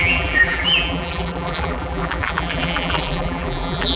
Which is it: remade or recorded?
remade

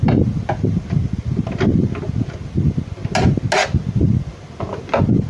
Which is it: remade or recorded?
recorded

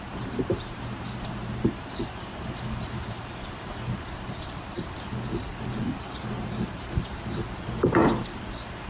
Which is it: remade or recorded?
remade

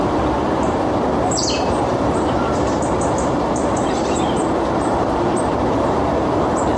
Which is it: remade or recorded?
remade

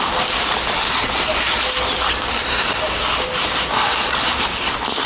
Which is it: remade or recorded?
recorded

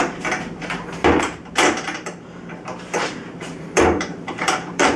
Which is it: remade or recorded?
remade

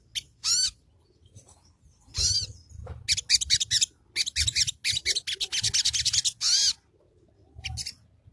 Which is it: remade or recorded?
recorded